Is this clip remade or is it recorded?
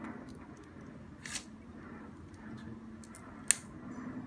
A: recorded